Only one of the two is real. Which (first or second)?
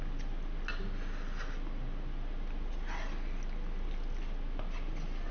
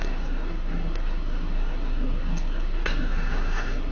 first